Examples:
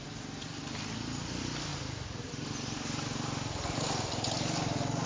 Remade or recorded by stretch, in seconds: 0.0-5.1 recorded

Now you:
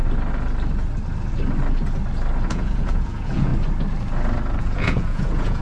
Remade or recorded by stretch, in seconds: 0.0-2.5 recorded; 2.5-3.5 remade; 3.5-4.6 recorded; 4.6-5.6 remade

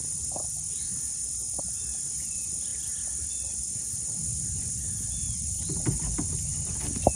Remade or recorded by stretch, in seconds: 0.0-7.2 recorded

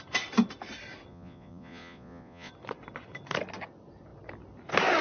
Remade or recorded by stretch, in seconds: 0.0-1.1 recorded; 1.1-2.5 remade; 2.5-5.0 recorded